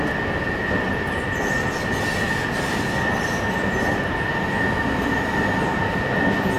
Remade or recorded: recorded